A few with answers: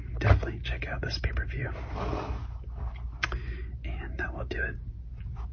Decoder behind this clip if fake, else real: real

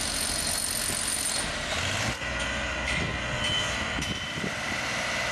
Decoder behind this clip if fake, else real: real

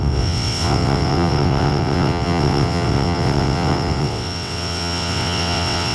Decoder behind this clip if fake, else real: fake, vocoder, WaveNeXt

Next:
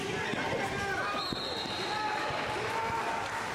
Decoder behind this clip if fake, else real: real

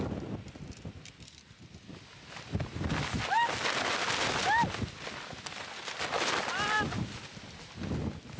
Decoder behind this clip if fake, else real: real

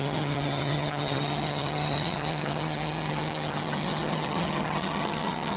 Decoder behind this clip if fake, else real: fake, vocoder, HiFi-GAN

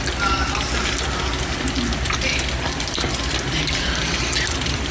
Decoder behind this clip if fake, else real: real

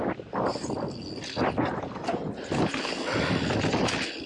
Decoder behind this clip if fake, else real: real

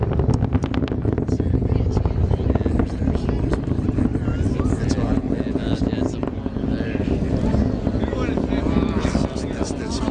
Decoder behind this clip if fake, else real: real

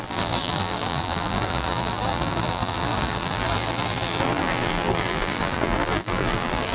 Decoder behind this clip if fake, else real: fake, vocoder, BigVGAN v2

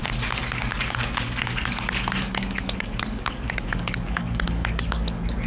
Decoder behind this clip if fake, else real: fake, codec, DAC